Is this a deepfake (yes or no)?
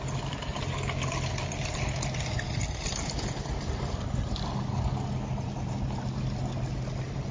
no